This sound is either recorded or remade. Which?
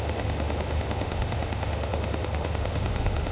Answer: remade